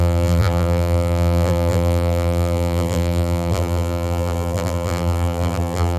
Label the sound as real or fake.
fake